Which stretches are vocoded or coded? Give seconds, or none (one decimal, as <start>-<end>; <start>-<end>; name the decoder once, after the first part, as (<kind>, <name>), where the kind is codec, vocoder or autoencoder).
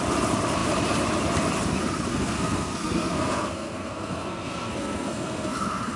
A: 2.1-6.0 (codec, SNAC)